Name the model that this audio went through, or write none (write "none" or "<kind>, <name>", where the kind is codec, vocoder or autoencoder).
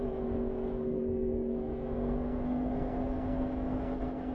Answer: codec, SNAC